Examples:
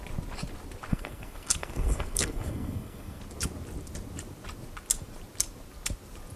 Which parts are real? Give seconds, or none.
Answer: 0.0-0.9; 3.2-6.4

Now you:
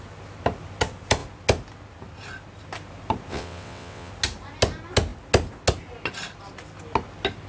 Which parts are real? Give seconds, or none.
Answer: 0.0-3.3; 4.1-7.5

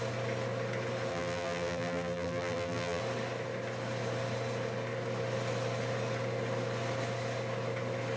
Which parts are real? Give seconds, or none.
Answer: 0.0-1.1; 3.0-8.2

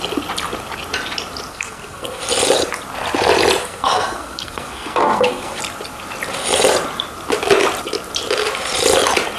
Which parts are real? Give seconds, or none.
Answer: 0.0-1.5; 2.2-3.6; 5.6-9.4

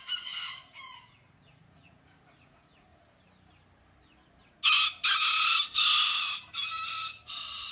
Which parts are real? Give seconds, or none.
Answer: 2.9-7.3

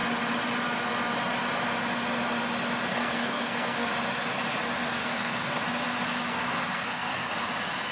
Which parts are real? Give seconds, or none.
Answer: 0.0-2.9; 3.9-5.0; 5.6-6.3; 7.3-7.9

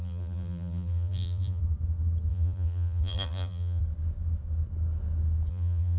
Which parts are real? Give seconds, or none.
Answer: 1.6-2.3; 3.8-5.5